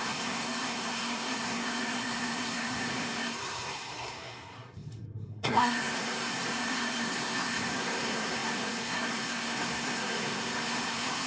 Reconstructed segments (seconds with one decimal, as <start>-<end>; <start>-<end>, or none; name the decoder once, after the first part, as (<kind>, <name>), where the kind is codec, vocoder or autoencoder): 0.0-11.3 (codec, SNAC)